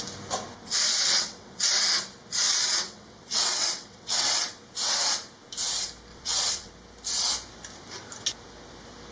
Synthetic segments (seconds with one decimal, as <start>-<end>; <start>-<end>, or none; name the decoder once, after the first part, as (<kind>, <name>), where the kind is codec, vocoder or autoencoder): 0.9-1.6 (vocoder, WaveNeXt); 2.6-4.5; 6.1-6.7